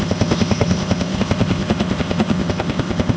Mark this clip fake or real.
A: fake